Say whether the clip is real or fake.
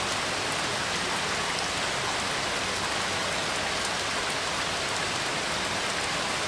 real